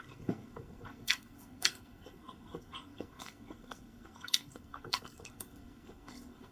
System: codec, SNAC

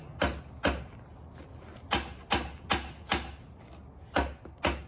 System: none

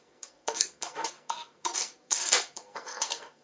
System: codec, SNAC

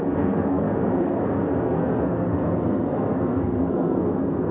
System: codec, SNAC